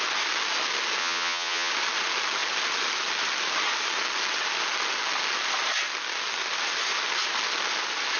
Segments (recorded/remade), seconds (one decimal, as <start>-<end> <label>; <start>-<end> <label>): 0.0-1.0 recorded; 1.0-1.7 remade; 1.7-8.2 recorded